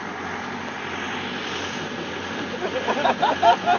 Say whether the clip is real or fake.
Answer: real